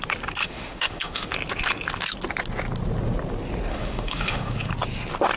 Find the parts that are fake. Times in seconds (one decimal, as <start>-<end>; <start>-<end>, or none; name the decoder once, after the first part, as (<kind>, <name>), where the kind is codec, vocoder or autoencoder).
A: 0.4-1.3 (autoencoder, DAC-VAE); 3.7-4.7